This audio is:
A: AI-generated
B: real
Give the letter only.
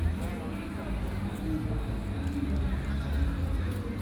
B